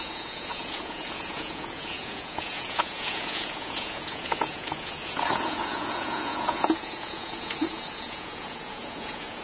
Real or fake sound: fake